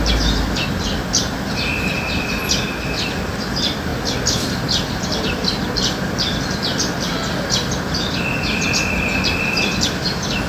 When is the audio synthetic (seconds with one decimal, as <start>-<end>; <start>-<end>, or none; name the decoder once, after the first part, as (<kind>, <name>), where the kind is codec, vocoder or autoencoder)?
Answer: none